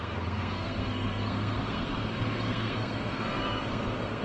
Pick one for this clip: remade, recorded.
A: remade